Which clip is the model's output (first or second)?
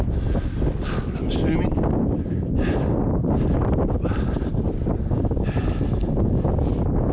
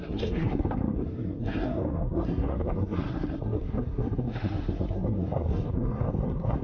second